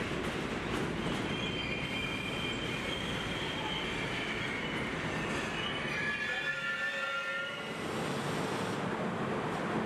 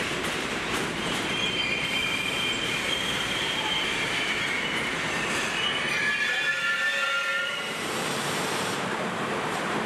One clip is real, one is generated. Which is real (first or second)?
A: first